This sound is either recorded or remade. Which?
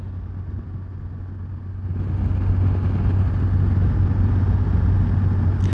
recorded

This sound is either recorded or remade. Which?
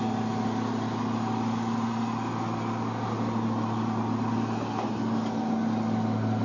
recorded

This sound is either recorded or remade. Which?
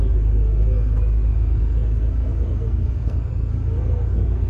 remade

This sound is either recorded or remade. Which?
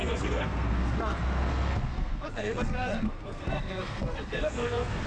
remade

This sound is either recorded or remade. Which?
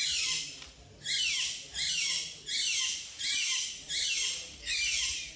recorded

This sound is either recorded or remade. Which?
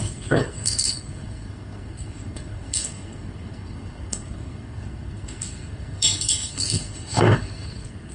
remade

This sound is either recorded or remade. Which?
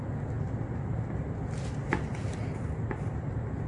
recorded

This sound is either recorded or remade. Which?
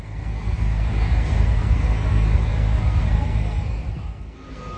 remade